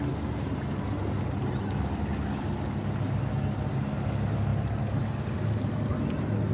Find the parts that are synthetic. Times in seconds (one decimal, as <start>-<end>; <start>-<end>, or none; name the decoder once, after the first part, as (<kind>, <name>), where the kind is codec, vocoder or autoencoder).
none